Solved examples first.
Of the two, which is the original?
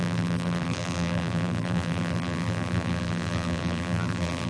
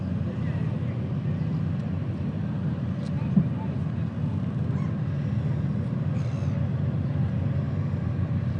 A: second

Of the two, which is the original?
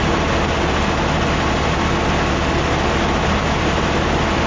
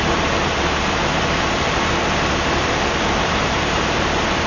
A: first